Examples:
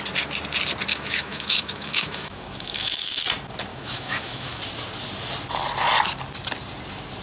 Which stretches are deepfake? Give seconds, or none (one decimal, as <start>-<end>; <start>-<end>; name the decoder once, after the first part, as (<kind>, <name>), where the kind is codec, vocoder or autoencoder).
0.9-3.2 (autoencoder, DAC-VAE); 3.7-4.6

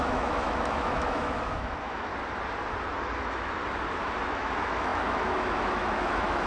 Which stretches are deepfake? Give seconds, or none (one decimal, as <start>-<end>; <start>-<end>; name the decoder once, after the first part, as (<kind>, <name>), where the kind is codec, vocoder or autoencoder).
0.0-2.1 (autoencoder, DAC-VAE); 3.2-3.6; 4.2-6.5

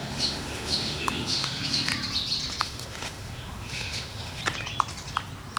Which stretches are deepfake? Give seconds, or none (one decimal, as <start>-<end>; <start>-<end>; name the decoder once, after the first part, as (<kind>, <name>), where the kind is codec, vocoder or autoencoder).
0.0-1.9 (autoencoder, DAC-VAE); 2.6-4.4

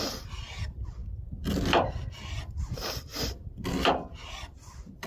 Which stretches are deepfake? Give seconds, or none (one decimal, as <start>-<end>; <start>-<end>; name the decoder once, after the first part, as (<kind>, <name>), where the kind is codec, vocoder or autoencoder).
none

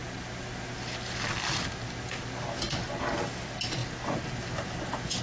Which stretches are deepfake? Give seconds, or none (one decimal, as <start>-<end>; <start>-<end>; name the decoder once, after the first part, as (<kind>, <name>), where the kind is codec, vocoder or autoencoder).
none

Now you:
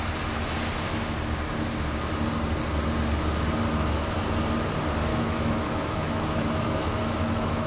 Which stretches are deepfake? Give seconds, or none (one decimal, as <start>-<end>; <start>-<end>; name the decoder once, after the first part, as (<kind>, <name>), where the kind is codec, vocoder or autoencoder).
5.1-7.7 (autoencoder, DAC-VAE)